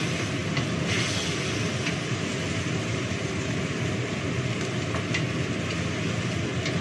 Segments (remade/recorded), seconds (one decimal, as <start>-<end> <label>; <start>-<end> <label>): 0.0-1.7 recorded; 1.7-3.6 remade; 3.6-6.8 recorded

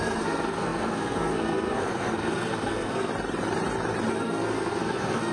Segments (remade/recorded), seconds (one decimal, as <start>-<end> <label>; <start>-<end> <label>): 0.0-3.1 remade; 3.1-4.1 recorded; 4.1-5.3 remade

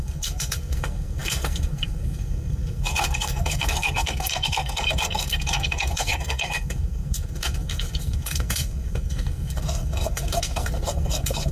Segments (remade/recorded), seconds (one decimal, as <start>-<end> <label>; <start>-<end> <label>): 0.0-11.5 remade

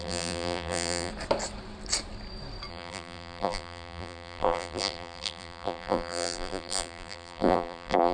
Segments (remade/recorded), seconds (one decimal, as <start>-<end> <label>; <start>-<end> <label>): 0.0-1.1 remade; 1.1-2.7 recorded; 2.7-8.1 remade

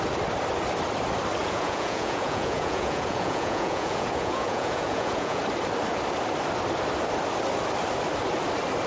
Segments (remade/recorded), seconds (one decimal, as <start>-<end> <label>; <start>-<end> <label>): 0.0-1.4 recorded; 1.4-5.4 remade; 5.4-8.9 recorded

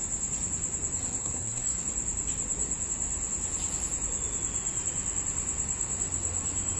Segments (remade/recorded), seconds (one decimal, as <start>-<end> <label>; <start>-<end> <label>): 0.0-1.2 recorded; 1.2-1.8 remade; 1.8-6.8 recorded

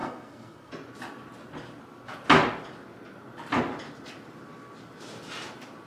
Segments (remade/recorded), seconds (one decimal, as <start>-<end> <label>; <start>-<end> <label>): 0.0-0.7 remade; 0.7-5.9 recorded

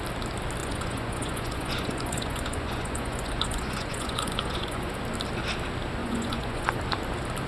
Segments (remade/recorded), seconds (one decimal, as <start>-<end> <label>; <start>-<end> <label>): 0.0-0.6 recorded; 0.6-4.9 remade; 4.9-6.0 recorded; 6.0-6.8 remade; 6.8-7.5 recorded